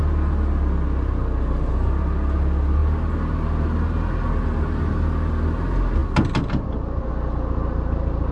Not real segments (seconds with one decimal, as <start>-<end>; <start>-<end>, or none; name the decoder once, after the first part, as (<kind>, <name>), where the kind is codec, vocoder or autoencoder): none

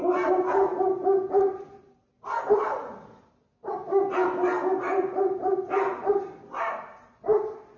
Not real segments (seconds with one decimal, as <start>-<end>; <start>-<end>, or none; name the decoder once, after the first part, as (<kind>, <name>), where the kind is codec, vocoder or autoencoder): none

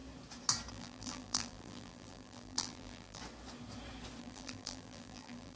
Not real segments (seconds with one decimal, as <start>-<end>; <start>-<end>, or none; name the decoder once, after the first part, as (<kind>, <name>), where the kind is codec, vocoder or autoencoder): 0.7-3.2 (vocoder, BigVGAN v2); 4.2-5.6

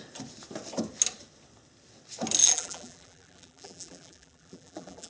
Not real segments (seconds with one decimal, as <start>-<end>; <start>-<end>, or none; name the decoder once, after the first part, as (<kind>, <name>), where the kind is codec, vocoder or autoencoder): 2.4-5.1 (vocoder, BigVGAN v2)